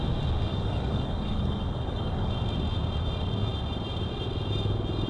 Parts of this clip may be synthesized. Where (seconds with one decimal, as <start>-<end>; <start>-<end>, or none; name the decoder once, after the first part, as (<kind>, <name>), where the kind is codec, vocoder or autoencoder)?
0.5-2.3 (codec, DAC)